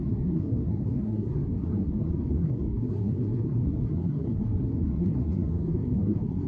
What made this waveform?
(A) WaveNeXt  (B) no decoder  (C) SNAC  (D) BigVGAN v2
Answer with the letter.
C